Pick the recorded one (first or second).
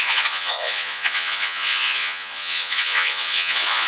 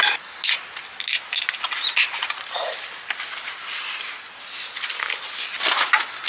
second